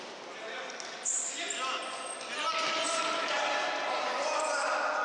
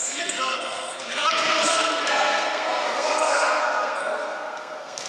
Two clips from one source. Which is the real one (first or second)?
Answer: first